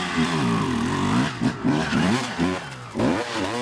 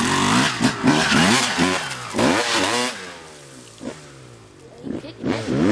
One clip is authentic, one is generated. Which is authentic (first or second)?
second